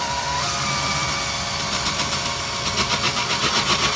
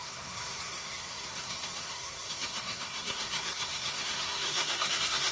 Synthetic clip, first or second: second